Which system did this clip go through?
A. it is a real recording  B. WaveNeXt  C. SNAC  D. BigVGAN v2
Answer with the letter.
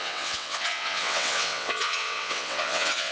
B